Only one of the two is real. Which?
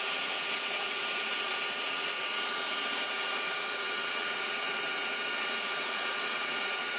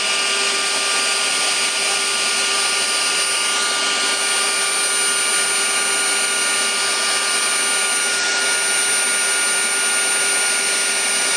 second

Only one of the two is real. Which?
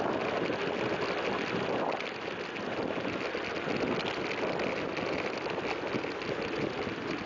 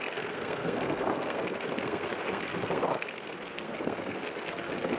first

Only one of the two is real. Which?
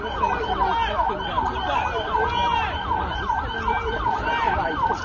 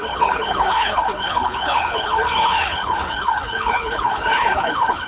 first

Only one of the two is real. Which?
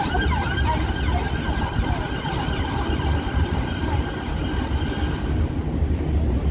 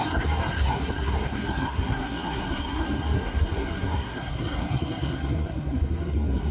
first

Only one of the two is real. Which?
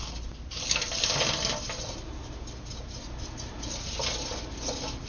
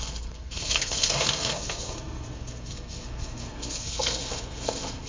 first